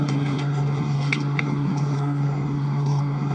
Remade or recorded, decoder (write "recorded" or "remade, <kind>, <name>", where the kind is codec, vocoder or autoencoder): remade, codec, SNAC